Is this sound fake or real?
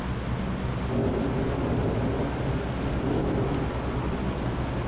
real